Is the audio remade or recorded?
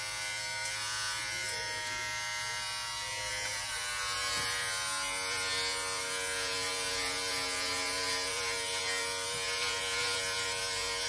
remade